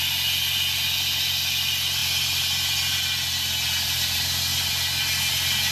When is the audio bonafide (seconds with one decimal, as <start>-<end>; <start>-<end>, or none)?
0.0-5.7